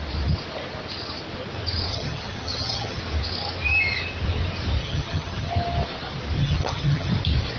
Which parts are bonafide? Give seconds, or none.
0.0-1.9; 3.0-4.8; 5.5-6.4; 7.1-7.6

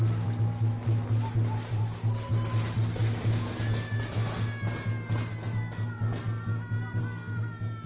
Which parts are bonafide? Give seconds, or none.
0.0-7.9